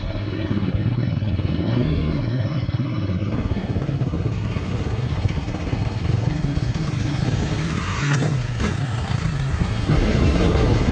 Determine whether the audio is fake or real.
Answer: fake